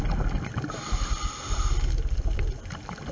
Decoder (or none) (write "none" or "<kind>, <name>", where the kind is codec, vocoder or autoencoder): none